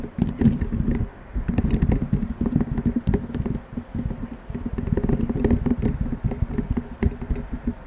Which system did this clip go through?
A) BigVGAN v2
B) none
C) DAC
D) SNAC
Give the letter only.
B